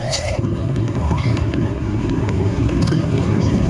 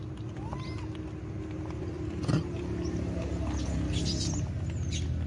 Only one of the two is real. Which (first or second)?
second